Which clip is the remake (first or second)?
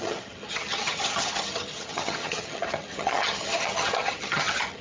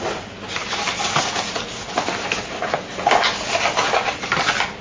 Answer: first